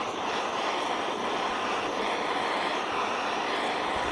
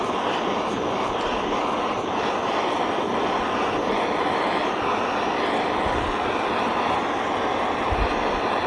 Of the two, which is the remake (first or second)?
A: first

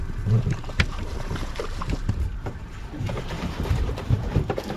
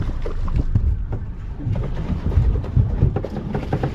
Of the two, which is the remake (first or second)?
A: first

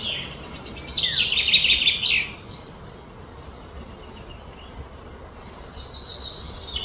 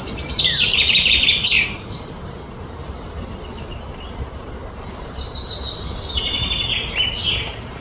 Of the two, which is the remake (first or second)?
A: second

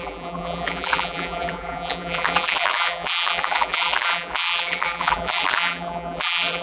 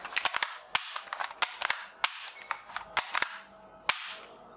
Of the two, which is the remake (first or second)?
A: first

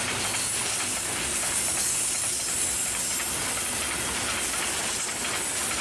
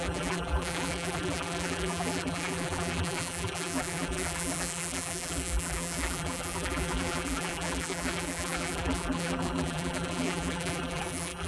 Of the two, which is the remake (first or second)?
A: second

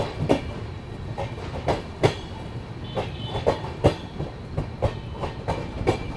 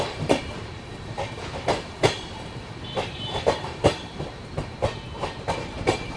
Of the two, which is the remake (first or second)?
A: second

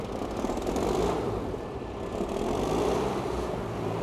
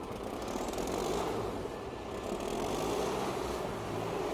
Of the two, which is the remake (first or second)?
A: first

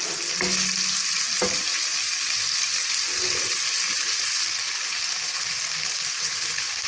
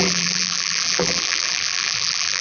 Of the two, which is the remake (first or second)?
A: second